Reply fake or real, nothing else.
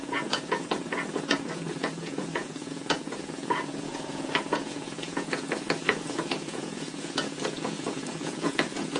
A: fake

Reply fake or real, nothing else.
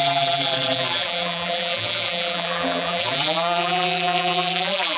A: fake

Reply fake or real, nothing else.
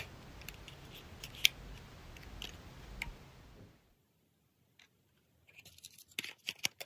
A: real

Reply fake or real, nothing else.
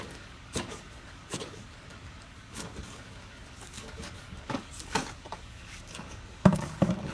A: fake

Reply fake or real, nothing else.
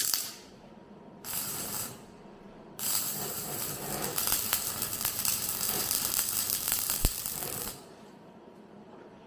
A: fake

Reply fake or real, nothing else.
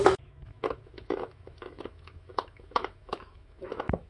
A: fake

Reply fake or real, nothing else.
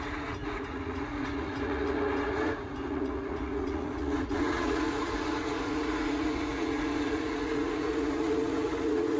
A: fake